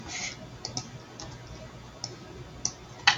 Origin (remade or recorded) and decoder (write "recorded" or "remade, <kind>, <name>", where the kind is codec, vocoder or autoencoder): recorded